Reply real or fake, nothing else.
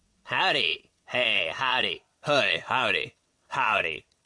fake